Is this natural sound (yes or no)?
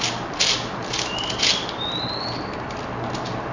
yes